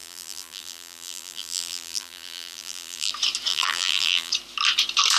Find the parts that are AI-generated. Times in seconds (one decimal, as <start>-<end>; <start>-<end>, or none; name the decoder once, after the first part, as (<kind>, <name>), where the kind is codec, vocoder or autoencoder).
0.0-3.1 (vocoder, BigVGAN v2); 3.5-4.3